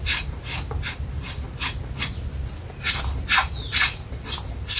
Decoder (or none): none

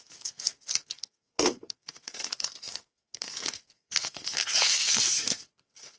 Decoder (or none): codec, SNAC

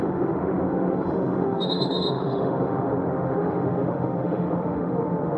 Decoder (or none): autoencoder, DAC-VAE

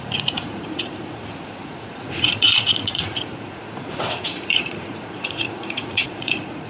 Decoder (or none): vocoder, Vocos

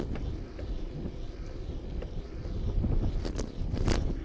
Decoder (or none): none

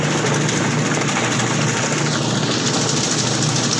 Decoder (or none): none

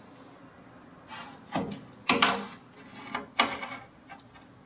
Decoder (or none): none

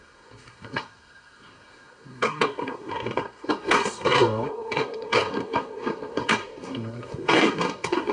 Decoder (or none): codec, SNAC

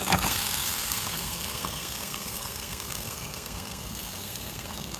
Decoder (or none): codec, SNAC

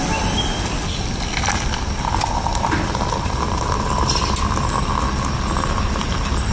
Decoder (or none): none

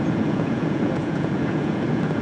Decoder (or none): vocoder, Vocos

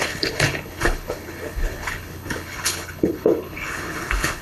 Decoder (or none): codec, HILCodec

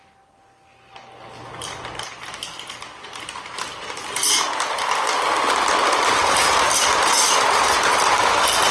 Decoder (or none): none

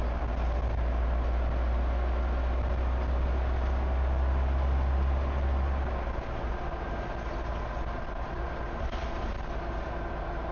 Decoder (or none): none